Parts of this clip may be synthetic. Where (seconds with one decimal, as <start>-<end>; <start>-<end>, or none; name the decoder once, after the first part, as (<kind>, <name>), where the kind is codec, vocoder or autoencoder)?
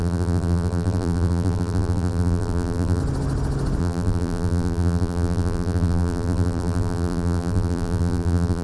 0.0-3.0 (vocoder, BigVGAN v2); 3.8-8.6